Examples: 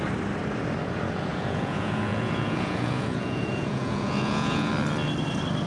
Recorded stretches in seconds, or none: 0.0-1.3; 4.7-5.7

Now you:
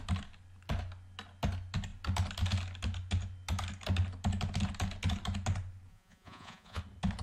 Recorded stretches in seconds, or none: 0.0-5.9; 6.8-7.2

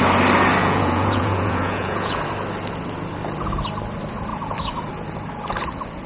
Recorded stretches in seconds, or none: 0.0-0.6; 2.2-6.1